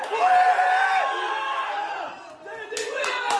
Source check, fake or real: real